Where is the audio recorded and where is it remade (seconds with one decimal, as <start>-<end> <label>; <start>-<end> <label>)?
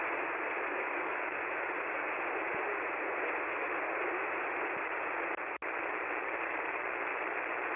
0.0-0.7 recorded; 0.7-1.4 remade; 1.4-7.8 recorded